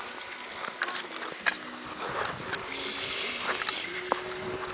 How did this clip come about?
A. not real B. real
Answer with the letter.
B